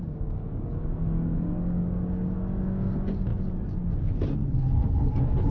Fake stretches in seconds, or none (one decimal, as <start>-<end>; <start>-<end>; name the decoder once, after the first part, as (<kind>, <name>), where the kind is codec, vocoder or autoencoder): 0.0-3.3 (codec, DAC)